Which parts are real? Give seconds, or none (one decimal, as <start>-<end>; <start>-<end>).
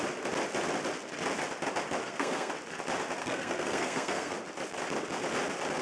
0.0-2.0; 2.5-3.2; 4.3-5.8